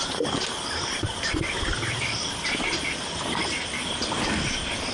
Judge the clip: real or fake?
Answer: real